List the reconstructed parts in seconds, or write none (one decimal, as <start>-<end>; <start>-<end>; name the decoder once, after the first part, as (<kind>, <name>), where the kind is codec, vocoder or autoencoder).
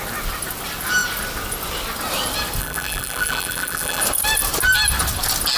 2.6-4.0 (vocoder, BigVGAN v2)